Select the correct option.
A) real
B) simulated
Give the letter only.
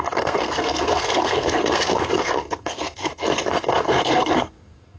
B